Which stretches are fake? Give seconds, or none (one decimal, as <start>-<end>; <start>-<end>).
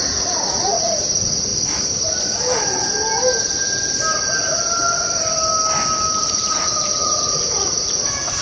0.0-1.5; 6.2-8.4